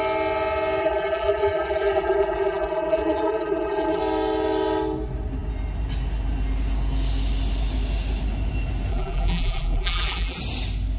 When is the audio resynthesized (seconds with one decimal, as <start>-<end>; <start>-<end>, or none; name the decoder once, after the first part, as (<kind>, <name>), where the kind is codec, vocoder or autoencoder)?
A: 0.8-4.0 (vocoder, BigVGAN v2); 8.9-10.4